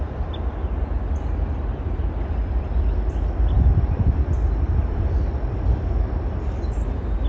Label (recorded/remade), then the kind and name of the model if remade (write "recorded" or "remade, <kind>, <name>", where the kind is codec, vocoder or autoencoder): remade, vocoder, BigVGAN v2